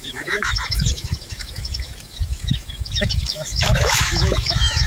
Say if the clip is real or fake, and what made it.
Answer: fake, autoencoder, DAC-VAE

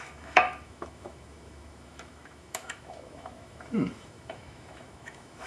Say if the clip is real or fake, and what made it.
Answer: fake, autoencoder, DAC-VAE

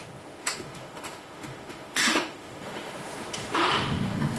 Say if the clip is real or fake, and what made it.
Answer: fake, autoencoder, DAC-VAE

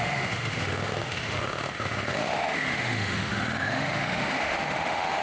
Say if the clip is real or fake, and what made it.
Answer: fake, autoencoder, DAC-VAE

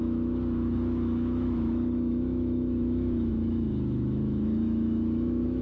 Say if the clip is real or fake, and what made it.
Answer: fake, autoencoder, DAC-VAE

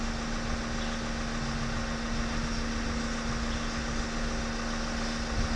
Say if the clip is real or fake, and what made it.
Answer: real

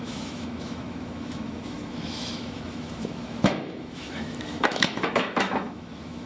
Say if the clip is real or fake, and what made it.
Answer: fake, autoencoder, DAC-VAE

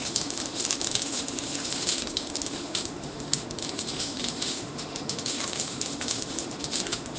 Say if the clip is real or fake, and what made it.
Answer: fake, autoencoder, DAC-VAE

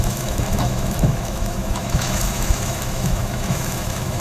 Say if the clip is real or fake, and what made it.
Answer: fake, autoencoder, DAC-VAE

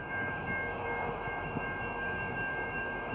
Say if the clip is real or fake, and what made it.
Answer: fake, autoencoder, DAC-VAE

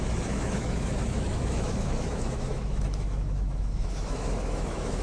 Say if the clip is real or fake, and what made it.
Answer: fake, autoencoder, DAC-VAE